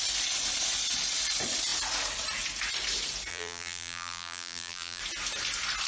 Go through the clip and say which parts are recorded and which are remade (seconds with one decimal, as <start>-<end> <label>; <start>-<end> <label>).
0.0-3.3 recorded; 3.3-5.0 remade; 5.0-5.9 recorded